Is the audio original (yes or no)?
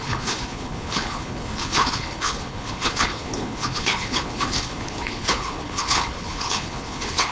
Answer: no